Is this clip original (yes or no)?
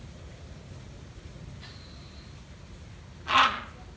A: yes